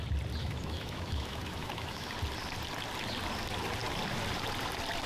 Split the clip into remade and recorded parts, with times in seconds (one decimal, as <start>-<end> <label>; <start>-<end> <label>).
0.0-0.4 recorded; 0.4-2.1 remade; 2.1-5.1 recorded